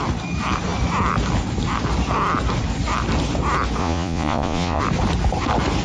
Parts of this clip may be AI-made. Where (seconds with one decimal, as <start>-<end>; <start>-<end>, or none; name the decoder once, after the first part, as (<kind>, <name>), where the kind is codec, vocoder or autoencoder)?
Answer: 3.8-4.8 (vocoder, Vocos)